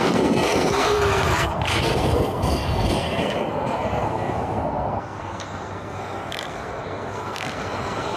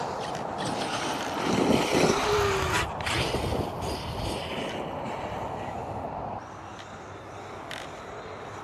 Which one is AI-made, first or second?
first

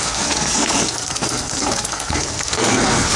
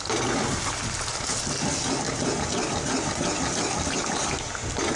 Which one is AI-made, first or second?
first